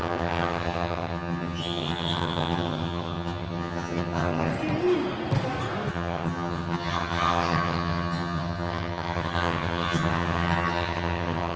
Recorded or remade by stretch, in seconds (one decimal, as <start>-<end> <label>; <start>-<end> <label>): 0.0-4.5 remade; 4.5-5.9 recorded; 5.9-11.6 remade

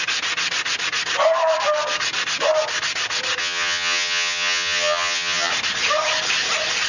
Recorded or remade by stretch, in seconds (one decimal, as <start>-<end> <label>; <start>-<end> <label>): 0.0-3.4 recorded; 3.4-5.5 remade; 5.5-6.9 recorded